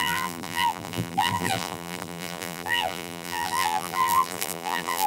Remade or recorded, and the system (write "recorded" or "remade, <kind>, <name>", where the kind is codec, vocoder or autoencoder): remade, vocoder, BigVGAN v2